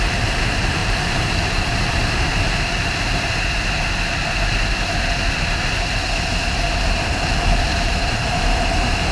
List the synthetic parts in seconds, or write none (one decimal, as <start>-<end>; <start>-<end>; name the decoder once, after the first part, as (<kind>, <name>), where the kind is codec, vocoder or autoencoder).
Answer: 0.0-2.3 (vocoder, BigVGAN v2); 7.6-9.1